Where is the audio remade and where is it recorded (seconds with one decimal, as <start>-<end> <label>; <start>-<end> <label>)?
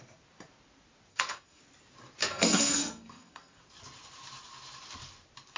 0.0-1.1 recorded; 1.1-1.6 remade; 1.6-2.2 recorded; 2.2-3.6 remade; 3.6-5.6 recorded